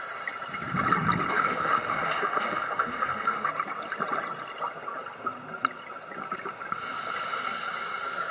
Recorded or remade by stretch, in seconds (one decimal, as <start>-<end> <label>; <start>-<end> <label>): 0.0-1.3 recorded; 1.3-3.5 remade; 3.5-8.3 recorded

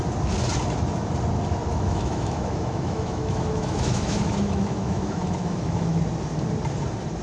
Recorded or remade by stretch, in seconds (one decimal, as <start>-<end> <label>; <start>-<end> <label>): 0.0-1.7 recorded; 1.7-6.0 remade; 6.0-7.2 recorded

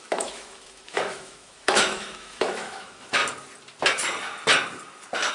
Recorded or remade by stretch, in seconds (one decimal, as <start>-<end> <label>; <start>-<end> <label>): 0.0-3.2 remade; 3.2-5.3 recorded